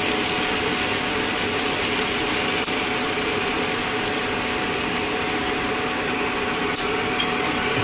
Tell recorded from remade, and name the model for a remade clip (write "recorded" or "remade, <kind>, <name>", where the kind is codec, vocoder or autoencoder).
recorded